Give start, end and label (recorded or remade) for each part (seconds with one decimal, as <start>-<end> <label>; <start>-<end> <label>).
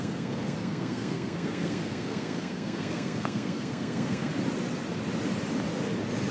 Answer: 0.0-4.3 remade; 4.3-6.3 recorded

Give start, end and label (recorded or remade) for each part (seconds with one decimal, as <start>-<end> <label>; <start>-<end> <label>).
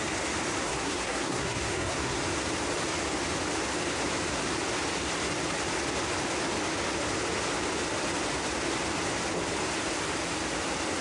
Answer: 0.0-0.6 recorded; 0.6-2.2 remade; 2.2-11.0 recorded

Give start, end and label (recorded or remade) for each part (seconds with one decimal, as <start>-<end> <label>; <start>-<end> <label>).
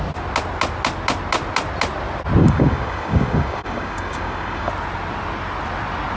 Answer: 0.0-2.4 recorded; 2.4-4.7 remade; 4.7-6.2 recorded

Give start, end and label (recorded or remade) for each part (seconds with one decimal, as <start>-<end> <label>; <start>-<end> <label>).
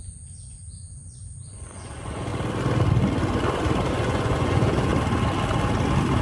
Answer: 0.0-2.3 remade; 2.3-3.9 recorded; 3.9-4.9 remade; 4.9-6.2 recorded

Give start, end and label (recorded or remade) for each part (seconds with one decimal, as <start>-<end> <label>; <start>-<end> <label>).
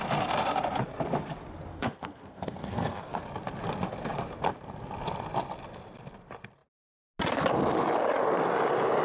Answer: 0.0-1.7 recorded; 1.7-3.2 remade; 3.2-9.0 recorded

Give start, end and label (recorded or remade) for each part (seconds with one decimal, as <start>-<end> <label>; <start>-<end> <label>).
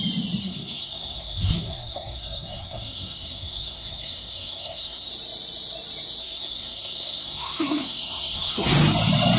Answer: 0.0-0.4 recorded; 0.4-5.1 remade; 5.1-6.2 recorded; 6.2-8.7 remade; 8.7-9.4 recorded